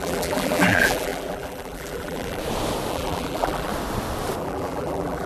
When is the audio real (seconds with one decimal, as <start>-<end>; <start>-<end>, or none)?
2.4-2.9; 3.7-4.4